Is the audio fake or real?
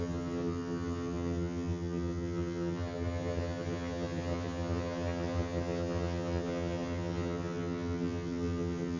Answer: fake